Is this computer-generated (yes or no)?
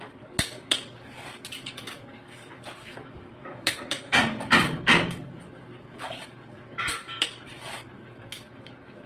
yes